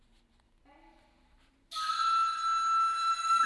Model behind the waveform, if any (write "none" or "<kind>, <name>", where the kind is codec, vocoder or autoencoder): none